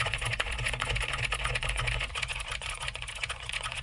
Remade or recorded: remade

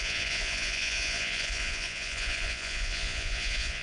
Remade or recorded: remade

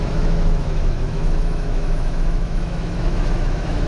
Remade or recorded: remade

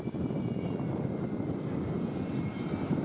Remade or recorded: recorded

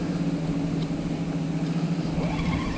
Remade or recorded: recorded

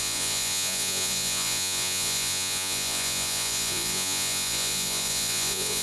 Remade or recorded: remade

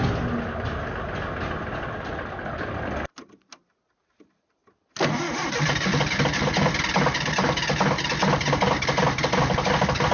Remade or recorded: recorded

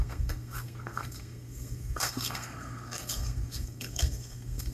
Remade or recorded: remade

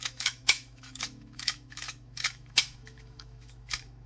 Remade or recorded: remade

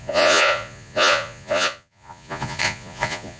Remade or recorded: remade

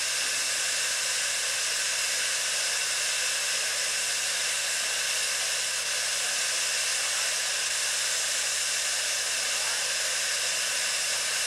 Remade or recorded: recorded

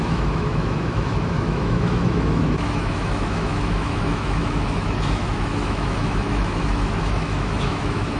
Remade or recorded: remade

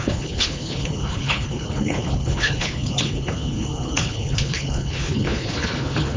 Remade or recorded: remade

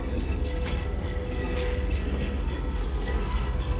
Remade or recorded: remade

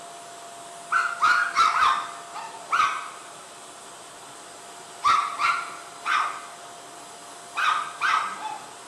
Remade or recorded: recorded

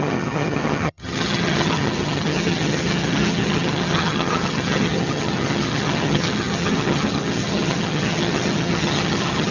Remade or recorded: remade